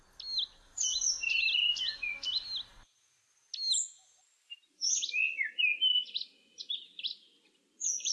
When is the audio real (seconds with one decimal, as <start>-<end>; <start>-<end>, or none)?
0.0-8.1